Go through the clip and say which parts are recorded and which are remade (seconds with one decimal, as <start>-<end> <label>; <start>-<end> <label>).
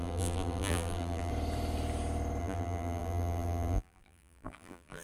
0.0-1.3 remade; 1.3-2.4 recorded; 2.4-5.0 remade